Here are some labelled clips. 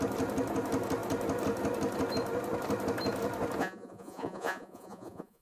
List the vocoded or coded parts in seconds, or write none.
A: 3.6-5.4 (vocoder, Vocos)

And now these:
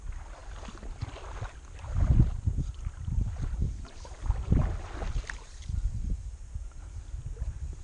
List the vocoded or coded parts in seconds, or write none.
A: none

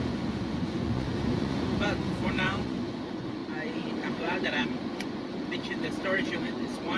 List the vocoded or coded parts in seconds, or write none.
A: 0.0-3.4 (vocoder, Vocos); 4.1-7.0

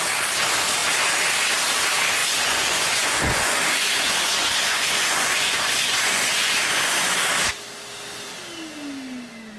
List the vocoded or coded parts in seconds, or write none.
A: 2.2-7.2 (vocoder, Vocos)

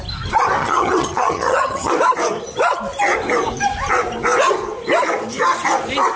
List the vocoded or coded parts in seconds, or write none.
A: 0.6-1.9 (vocoder, HiFi-GAN)

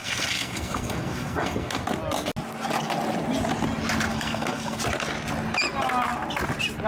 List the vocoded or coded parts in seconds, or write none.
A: 0.0-1.8 (codec, SNAC); 4.1-4.8

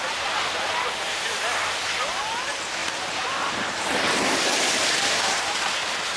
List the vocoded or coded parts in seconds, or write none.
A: none